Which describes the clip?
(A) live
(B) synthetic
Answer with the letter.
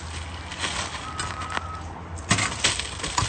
A